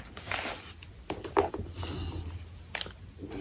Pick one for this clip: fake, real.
real